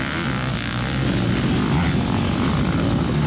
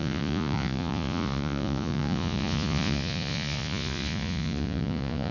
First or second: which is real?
first